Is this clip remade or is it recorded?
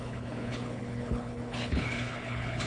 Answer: remade